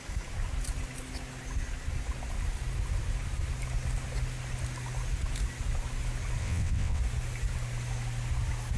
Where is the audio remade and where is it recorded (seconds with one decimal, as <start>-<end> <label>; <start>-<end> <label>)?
0.0-6.4 recorded; 6.4-7.0 remade; 7.0-8.8 recorded